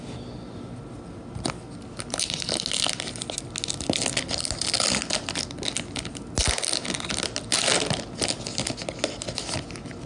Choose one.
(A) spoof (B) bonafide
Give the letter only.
B